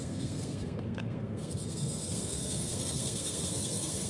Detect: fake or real fake